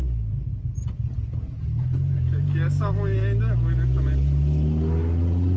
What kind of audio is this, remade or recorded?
recorded